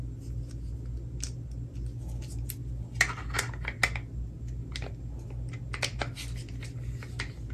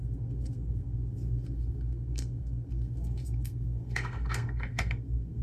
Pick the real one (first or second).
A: first